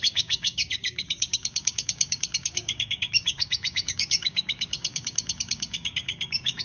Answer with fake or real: fake